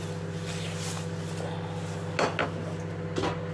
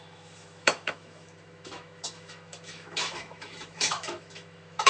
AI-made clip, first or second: second